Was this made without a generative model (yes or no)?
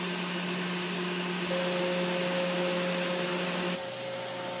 yes